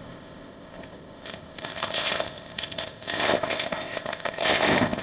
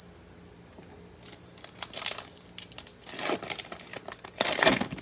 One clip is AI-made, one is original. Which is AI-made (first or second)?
first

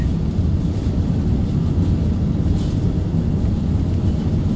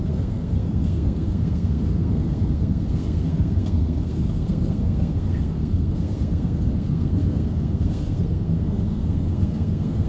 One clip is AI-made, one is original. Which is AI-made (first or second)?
second